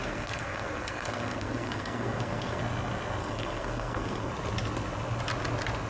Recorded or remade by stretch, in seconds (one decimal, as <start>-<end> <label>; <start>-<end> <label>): 0.0-2.6 remade; 2.6-3.2 recorded; 3.2-4.3 remade; 4.3-5.9 recorded